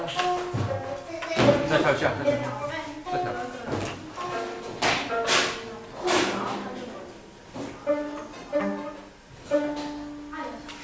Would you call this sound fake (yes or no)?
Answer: no